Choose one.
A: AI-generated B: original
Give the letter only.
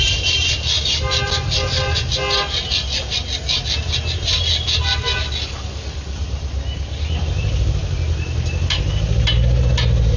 B